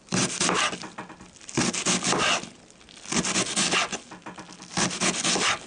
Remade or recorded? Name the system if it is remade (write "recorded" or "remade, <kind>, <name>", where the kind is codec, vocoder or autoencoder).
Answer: recorded